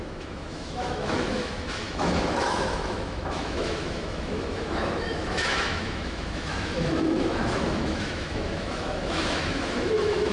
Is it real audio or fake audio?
fake